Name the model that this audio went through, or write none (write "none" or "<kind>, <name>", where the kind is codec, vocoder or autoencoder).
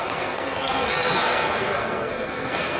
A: codec, SNAC